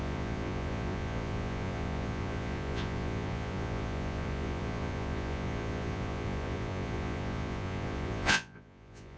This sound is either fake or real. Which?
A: fake